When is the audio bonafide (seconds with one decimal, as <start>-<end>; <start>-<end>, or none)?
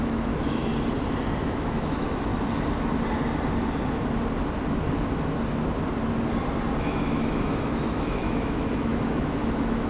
0.7-1.4; 2.3-6.8